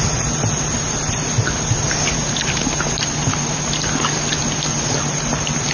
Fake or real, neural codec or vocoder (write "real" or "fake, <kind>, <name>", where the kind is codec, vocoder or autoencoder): real